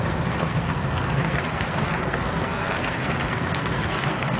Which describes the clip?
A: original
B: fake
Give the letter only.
B